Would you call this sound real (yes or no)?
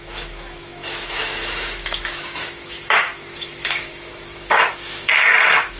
no